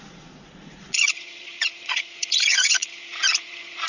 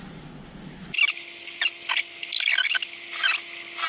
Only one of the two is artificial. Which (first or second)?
first